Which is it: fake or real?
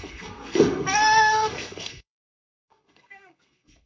fake